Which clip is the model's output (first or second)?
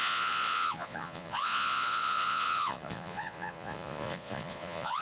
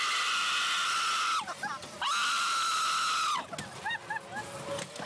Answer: first